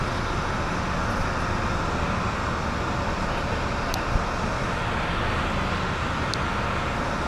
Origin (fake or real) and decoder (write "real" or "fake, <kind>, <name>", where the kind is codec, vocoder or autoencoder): real